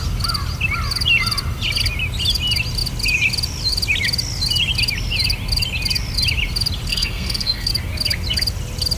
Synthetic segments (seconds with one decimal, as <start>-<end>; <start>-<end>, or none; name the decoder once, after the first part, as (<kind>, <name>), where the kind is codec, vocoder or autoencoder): 6.9-7.7 (codec, SNAC)